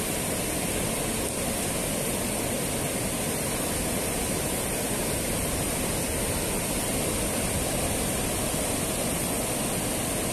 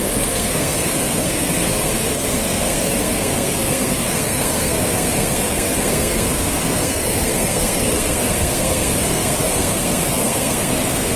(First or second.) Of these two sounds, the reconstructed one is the second